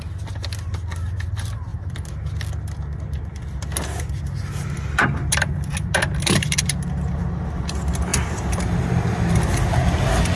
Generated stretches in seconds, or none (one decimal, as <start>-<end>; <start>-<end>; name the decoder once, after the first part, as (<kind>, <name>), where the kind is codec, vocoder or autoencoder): none